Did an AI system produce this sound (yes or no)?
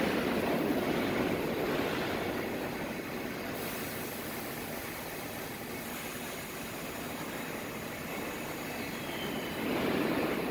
no